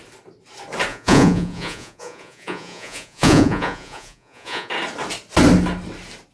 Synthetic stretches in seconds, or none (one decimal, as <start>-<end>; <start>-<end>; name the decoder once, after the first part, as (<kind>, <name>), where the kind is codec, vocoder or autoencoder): 0.9-4.7 (vocoder, Vocos)